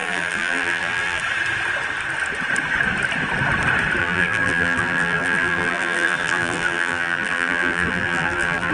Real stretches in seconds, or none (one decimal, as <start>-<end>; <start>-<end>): 1.2-4.0